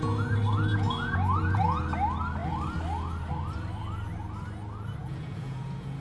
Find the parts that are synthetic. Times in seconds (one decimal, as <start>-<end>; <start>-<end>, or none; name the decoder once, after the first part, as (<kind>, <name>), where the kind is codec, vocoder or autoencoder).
0.7-1.8 (vocoder, Vocos); 5.0-6.0